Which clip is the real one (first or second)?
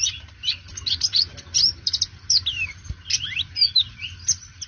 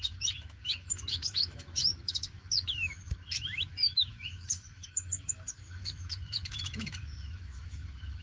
first